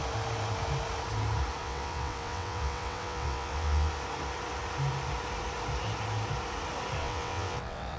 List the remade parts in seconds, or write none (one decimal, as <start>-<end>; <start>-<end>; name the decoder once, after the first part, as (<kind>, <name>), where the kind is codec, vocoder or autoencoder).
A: 1.6-3.9 (vocoder, WaveNeXt); 7.0-8.0